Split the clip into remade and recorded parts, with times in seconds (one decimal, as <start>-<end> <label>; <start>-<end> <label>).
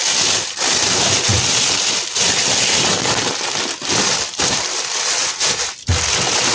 0.0-6.5 recorded